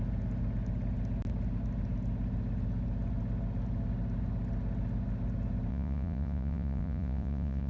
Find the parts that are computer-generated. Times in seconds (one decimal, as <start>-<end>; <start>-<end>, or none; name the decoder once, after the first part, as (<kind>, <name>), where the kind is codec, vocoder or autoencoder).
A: 5.7-7.7 (vocoder, Vocos)